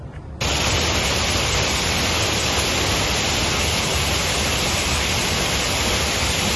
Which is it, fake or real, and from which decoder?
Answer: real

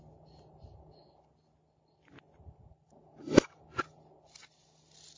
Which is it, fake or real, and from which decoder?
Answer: real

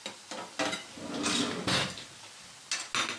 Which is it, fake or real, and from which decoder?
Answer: real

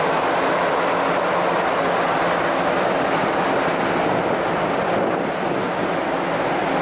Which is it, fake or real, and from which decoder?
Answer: real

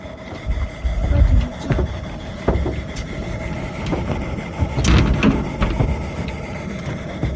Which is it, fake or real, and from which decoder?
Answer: real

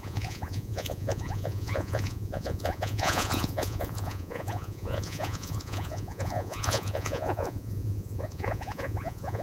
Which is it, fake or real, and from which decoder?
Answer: fake, vocoder, Vocos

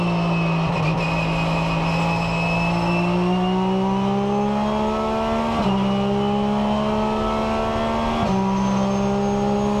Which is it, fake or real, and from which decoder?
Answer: real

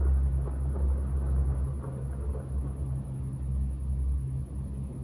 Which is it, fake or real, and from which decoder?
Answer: real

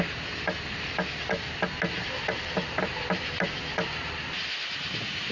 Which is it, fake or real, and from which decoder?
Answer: real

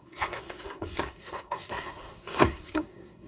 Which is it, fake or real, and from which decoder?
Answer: fake, codec, SNAC